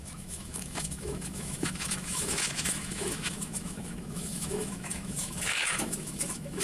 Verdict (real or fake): fake